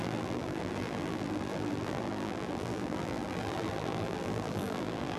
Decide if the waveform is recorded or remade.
remade